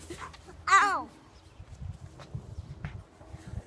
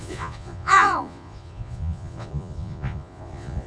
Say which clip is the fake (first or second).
second